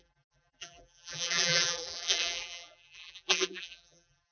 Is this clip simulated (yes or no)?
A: yes